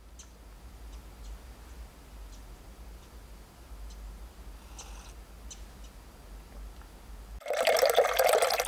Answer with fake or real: real